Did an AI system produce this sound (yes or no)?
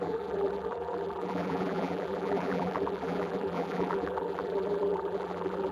yes